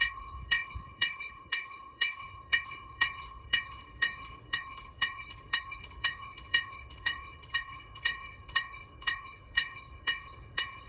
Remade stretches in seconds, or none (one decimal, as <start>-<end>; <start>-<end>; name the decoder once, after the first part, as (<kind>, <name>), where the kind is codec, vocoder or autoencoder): 0.0-10.9 (codec, HILCodec)